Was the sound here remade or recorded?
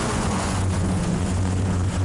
remade